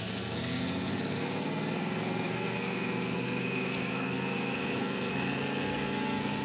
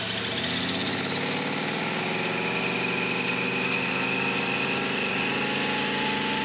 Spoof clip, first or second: first